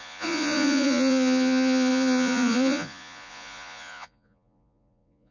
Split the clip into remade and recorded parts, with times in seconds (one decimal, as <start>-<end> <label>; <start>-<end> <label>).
0.0-5.3 remade